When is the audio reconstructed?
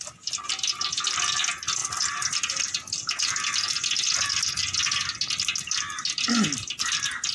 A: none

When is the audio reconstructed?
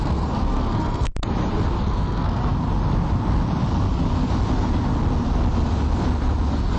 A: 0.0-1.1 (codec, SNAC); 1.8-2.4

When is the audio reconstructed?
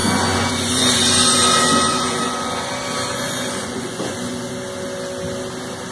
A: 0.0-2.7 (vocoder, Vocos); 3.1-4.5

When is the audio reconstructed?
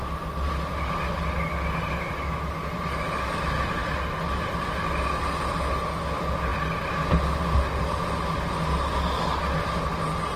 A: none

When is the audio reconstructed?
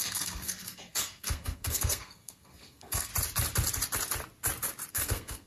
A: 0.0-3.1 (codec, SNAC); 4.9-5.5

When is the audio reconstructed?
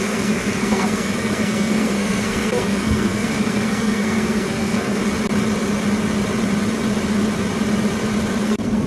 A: 0.0-5.0 (codec, SNAC); 8.4-8.9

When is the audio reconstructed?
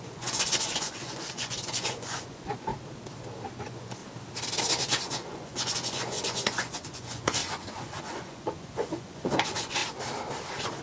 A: 0.0-2.7 (vocoder, Vocos); 3.5-4.0; 4.6-9.8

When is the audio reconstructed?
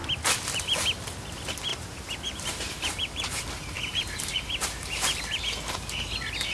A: 1.7-5.4 (vocoder, BigVGAN v2)